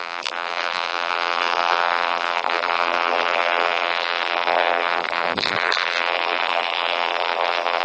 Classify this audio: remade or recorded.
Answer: remade